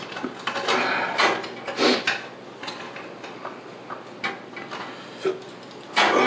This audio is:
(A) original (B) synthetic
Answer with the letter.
A